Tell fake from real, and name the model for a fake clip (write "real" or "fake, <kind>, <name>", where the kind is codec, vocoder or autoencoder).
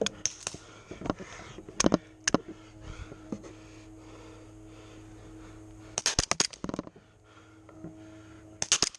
real